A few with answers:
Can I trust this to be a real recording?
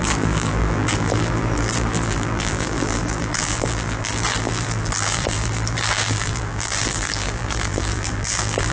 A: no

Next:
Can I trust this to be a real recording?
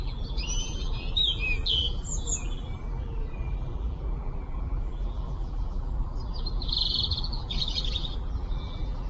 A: no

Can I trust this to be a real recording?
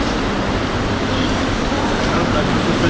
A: no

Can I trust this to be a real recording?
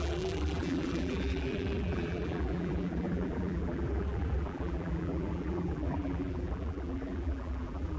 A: no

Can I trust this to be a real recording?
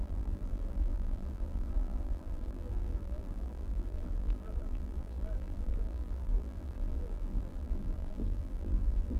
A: no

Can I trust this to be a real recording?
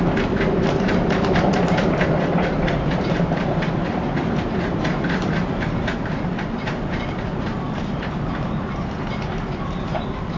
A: no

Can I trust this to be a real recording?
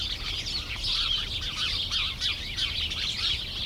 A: yes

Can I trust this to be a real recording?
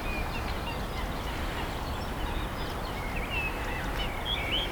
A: yes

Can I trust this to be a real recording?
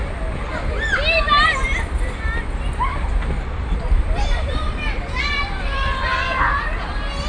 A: no